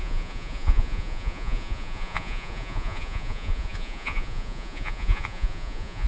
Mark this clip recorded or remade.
remade